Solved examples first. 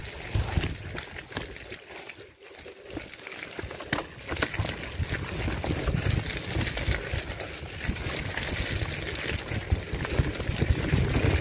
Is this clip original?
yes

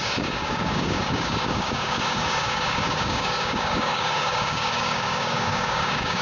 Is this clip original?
no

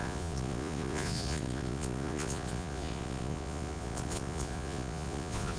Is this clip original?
no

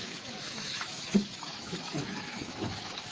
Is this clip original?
no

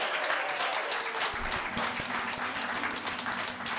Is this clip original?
yes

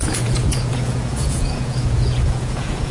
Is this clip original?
no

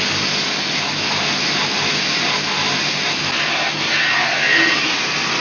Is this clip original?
yes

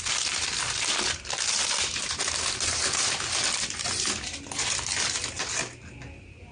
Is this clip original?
yes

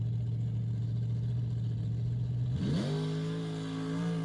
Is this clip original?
yes